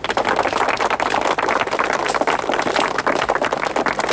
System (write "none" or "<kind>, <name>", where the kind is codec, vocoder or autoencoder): vocoder, BigVGAN v2